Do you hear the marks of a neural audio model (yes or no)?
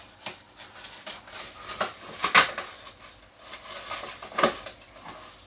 no